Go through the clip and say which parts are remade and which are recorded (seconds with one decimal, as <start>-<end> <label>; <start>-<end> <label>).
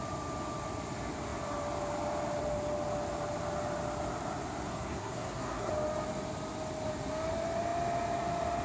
0.0-4.7 recorded; 4.7-5.7 remade; 5.7-8.6 recorded